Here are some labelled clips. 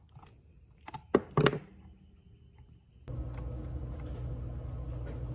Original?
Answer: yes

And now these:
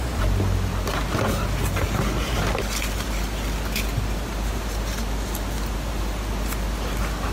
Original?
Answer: yes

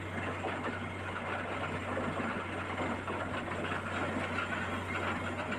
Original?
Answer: yes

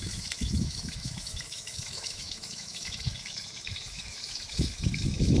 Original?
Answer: no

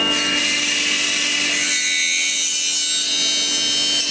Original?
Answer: yes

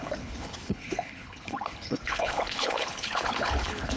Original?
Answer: no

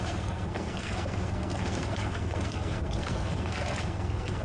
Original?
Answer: no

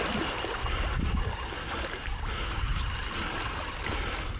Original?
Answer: yes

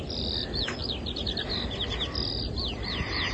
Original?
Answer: yes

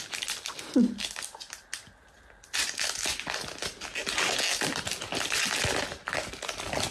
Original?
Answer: yes